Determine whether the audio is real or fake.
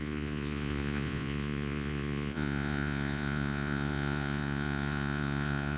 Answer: fake